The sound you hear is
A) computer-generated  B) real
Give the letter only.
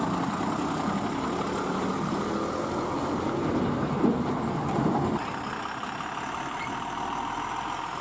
B